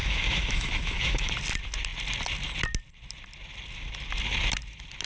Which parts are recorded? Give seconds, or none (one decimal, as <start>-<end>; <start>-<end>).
1.3-5.1